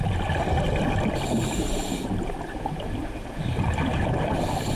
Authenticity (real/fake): real